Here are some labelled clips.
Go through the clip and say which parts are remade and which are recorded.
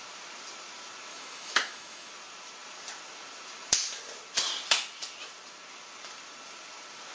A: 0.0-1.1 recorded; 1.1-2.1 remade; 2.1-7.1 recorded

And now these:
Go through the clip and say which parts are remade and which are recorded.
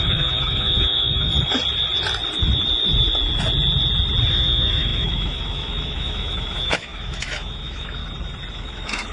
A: 0.0-1.3 remade; 1.3-4.3 recorded; 4.3-8.0 remade; 8.0-8.5 recorded; 8.5-9.1 remade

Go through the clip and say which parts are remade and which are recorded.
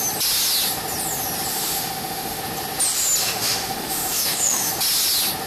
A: 0.0-1.5 recorded; 1.5-2.4 remade; 2.4-3.2 recorded; 3.2-4.7 remade; 4.7-5.5 recorded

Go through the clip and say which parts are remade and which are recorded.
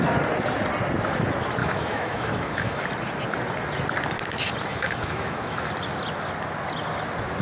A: 0.0-1.6 recorded; 1.6-2.8 remade; 2.8-4.7 recorded; 4.7-5.7 remade; 5.7-7.4 recorded